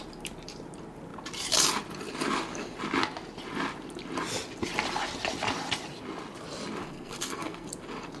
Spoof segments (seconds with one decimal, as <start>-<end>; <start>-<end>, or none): 6.8-7.7